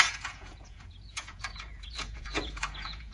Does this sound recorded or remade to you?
remade